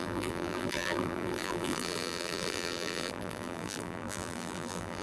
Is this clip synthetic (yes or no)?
yes